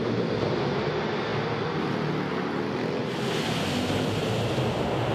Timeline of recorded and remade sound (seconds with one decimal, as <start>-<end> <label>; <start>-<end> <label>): 0.0-5.1 recorded